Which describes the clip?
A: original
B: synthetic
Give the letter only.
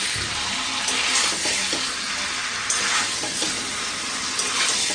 A